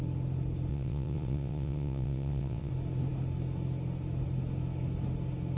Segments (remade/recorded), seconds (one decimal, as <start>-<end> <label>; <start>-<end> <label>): 0.0-0.7 recorded; 0.7-2.7 remade; 2.7-5.6 recorded